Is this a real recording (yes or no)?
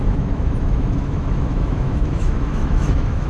no